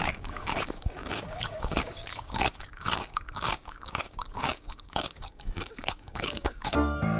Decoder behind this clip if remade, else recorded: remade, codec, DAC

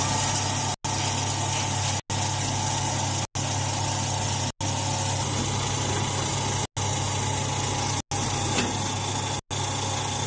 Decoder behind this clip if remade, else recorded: recorded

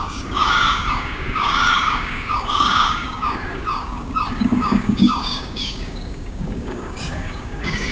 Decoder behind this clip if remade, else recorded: remade, codec, DAC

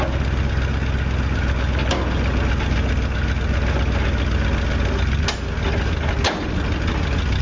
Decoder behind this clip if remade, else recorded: recorded